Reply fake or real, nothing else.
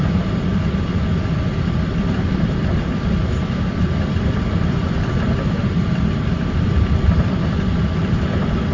fake